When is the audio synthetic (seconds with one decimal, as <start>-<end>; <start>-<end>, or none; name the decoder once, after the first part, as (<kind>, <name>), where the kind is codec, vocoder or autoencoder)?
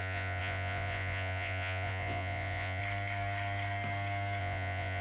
0.0-2.8 (vocoder, Vocos); 4.4-5.0